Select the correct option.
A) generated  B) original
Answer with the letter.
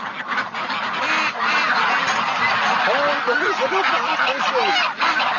B